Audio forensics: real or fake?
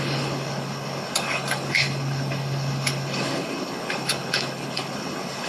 fake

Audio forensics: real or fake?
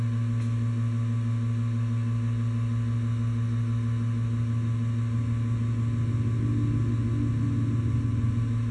real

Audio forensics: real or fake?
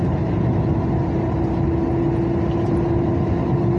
real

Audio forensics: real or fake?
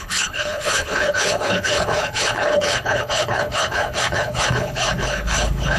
fake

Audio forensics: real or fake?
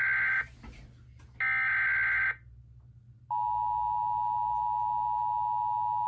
real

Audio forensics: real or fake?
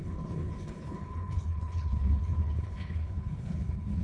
fake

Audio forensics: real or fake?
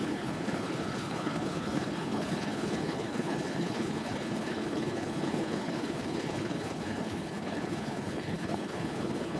fake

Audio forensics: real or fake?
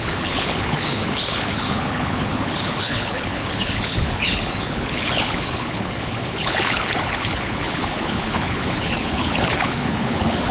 fake